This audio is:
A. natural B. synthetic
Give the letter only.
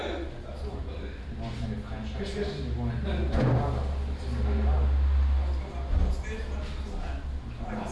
A